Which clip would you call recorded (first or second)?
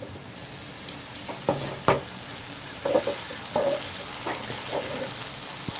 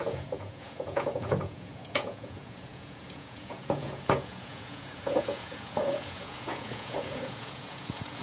first